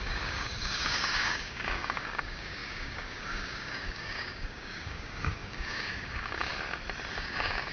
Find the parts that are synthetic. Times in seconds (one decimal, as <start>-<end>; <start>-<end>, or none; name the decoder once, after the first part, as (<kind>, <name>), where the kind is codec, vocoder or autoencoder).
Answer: 0.0-6.5 (codec, DAC); 7.1-7.7

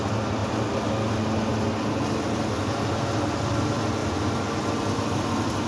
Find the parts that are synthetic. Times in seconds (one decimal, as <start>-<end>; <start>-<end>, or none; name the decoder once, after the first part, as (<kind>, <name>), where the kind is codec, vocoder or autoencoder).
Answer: none

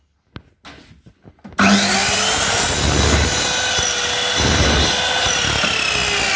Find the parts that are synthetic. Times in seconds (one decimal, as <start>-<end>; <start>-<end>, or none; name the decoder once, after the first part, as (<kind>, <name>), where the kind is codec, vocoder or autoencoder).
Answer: none